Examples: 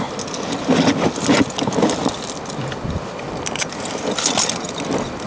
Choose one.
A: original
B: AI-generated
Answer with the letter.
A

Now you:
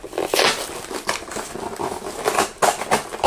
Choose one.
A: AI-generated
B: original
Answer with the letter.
B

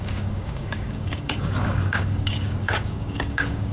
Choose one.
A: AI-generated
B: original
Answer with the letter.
A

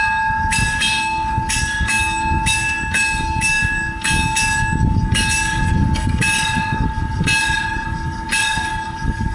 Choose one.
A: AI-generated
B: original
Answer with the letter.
A